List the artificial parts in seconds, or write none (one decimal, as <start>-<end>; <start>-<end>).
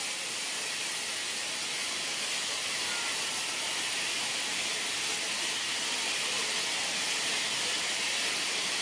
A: none